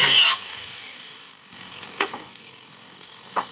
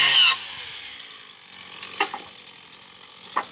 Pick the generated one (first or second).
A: first